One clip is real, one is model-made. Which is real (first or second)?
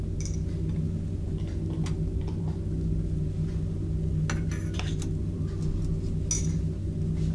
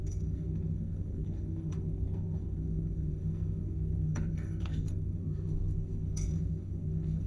first